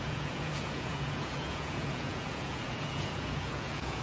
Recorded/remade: remade